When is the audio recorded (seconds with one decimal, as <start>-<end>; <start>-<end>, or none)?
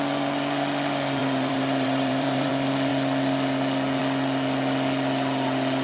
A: 0.0-1.2; 2.5-5.8